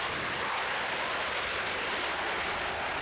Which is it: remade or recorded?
recorded